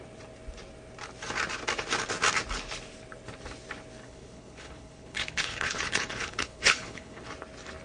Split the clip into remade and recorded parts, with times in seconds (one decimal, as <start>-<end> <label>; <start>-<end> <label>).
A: 0.0-4.0 recorded; 4.0-7.3 remade; 7.3-7.8 recorded